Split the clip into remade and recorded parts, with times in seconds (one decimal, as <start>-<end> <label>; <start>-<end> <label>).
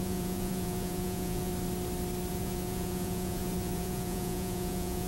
0.0-1.5 remade; 1.5-2.3 recorded; 2.3-5.1 remade